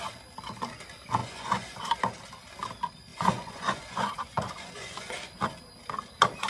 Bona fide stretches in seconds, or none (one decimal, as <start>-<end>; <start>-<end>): 0.0-1.2; 1.9-3.1; 5.4-6.5